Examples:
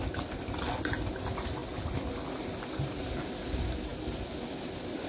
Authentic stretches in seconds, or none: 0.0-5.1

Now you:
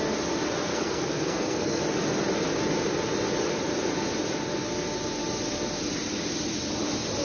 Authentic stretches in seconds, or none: 0.0-0.7; 1.8-7.2

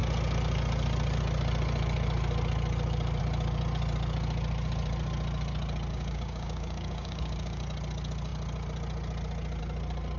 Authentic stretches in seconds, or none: 0.0-5.9; 7.6-10.2

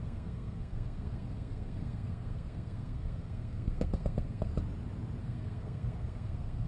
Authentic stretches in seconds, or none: 4.5-5.2

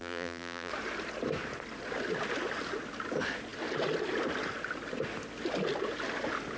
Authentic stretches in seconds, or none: 0.7-6.6